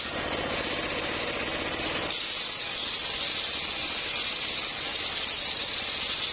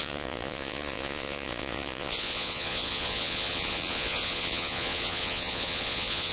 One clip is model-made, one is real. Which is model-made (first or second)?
second